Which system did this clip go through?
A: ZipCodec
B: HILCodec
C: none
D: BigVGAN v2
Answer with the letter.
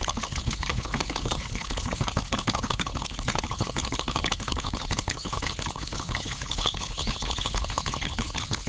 B